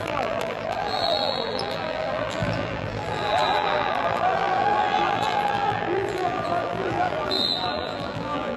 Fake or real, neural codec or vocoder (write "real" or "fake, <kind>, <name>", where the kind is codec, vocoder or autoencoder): fake, vocoder, BigVGAN v2